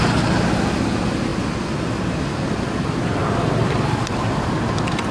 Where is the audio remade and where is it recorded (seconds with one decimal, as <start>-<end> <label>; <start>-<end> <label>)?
0.0-5.1 recorded